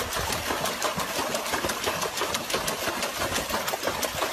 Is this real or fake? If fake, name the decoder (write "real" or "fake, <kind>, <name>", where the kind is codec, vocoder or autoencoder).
real